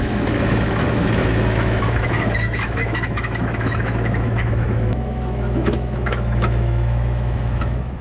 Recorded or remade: remade